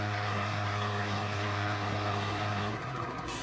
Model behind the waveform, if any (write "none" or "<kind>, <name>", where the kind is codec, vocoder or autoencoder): codec, SNAC